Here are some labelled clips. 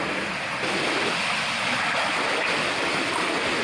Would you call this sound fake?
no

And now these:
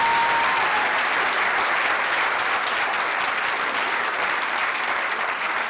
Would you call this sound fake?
no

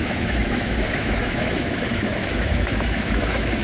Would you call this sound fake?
yes